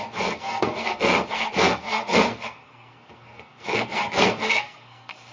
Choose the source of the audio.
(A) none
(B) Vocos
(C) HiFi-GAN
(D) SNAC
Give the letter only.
D